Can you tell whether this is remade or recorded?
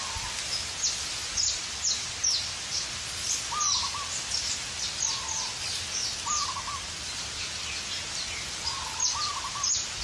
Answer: recorded